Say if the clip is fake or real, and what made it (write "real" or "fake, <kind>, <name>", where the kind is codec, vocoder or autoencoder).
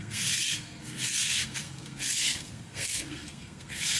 fake, codec, SNAC